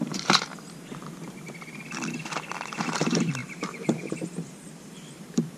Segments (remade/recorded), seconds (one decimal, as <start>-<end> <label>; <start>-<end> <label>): 0.0-0.5 remade; 0.5-2.8 recorded; 2.8-5.6 remade